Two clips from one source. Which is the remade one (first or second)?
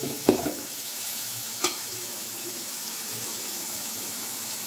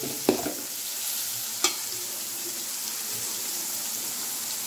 first